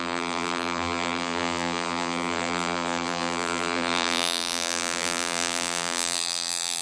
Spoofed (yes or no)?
yes